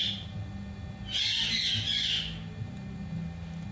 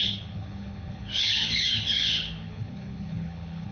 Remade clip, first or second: second